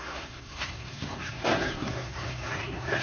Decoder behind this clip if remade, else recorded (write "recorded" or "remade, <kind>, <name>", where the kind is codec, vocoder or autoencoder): remade, codec, SNAC